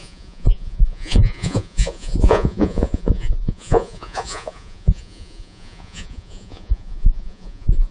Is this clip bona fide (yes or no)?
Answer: no